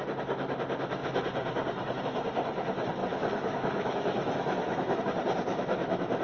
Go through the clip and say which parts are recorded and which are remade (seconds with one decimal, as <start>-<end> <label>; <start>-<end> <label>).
0.0-3.0 recorded; 3.0-5.0 remade; 5.0-5.5 recorded; 5.5-6.2 remade